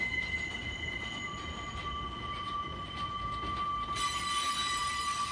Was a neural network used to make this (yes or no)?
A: no